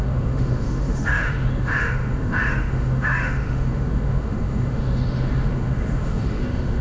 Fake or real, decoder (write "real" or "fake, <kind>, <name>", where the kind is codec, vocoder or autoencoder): fake, autoencoder, DAC-VAE